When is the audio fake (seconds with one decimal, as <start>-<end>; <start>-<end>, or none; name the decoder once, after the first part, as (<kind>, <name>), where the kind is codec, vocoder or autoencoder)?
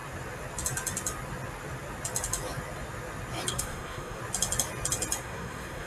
3.5-4.2 (codec, SNAC); 5.2-5.9